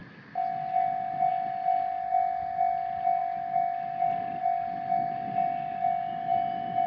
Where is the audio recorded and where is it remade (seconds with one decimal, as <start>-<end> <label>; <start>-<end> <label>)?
0.0-6.9 recorded